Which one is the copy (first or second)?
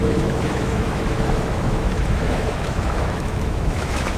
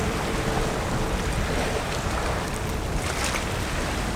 first